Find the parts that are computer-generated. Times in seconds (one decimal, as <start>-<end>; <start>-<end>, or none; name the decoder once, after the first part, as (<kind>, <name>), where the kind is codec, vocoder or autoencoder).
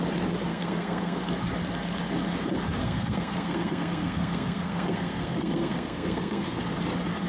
0.5-1.2 (codec, SNAC); 2.8-6.6